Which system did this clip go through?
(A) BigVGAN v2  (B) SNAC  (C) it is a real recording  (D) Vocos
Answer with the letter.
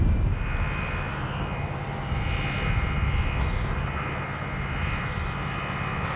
C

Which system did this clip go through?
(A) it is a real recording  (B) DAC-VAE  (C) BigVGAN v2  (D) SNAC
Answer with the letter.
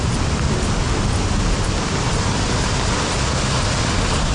A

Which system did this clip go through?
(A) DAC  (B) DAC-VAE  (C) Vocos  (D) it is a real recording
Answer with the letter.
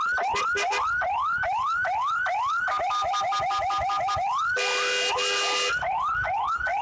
D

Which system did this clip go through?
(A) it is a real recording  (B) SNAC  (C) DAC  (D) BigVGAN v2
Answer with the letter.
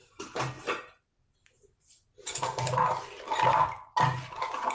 A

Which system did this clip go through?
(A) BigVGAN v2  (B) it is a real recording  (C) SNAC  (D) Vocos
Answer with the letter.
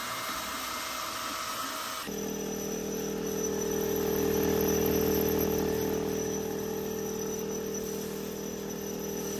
B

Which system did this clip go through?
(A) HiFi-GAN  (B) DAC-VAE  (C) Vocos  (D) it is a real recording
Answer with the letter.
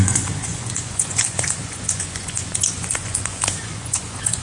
C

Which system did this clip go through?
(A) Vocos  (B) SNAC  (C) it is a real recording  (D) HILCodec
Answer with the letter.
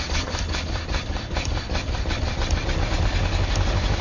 C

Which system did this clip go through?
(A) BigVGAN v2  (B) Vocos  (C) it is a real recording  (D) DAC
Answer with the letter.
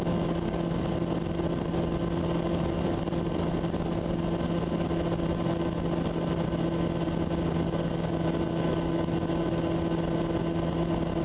C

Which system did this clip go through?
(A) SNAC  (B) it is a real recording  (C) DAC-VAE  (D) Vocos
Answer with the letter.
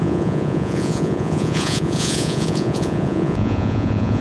D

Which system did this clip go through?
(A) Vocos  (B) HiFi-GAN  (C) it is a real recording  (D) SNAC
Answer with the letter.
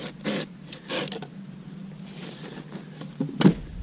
C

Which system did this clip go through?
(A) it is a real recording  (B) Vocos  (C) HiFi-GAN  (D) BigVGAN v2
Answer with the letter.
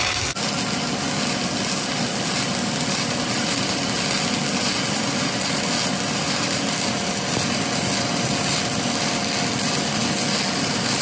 A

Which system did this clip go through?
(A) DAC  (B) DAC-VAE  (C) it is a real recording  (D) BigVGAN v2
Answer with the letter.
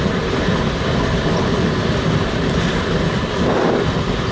C